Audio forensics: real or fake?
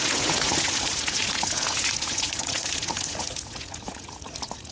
fake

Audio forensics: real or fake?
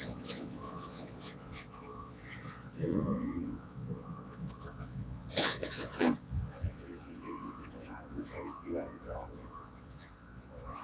fake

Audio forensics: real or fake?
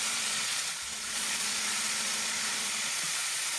fake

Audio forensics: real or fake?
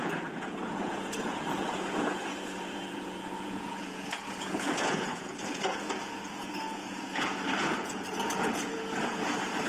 fake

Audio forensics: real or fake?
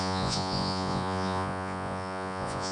fake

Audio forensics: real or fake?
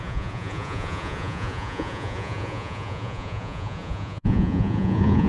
fake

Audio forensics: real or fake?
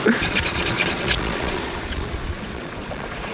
fake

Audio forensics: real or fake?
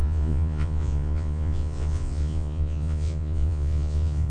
fake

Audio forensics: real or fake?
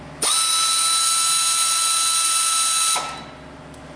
real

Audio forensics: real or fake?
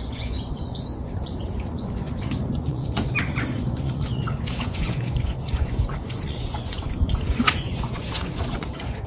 fake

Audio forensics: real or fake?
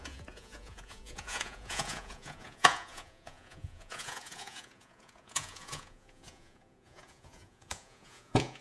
fake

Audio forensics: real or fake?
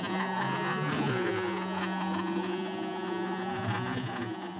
fake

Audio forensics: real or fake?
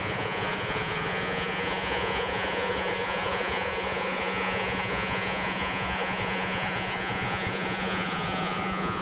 fake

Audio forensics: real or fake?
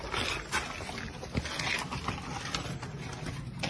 real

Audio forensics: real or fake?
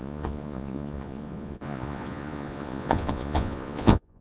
fake